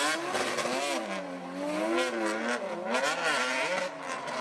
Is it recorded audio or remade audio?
recorded